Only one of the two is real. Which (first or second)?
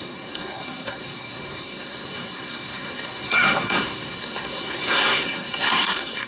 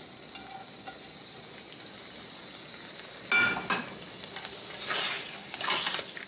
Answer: second